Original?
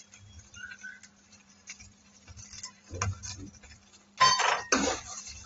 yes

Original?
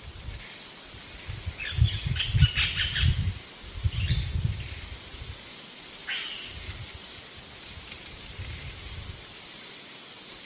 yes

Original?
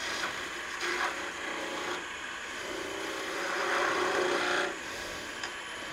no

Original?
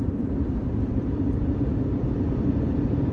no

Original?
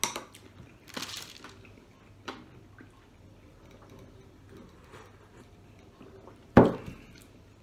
yes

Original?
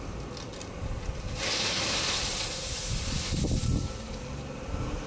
yes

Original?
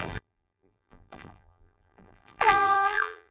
no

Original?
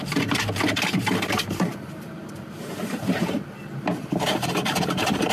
no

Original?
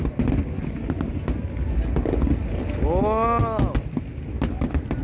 yes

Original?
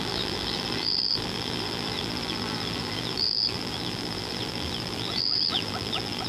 no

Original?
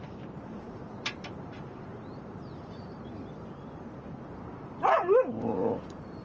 no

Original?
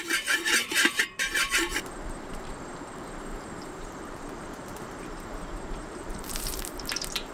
no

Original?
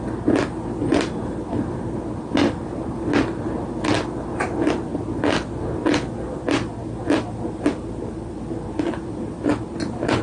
yes